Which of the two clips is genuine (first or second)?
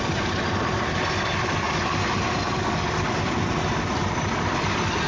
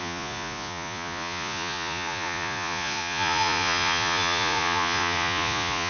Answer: first